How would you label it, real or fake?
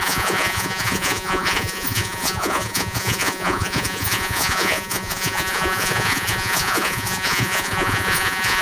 fake